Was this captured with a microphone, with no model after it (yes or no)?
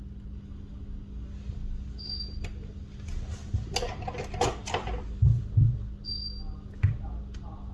yes